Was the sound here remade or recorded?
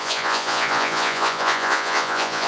remade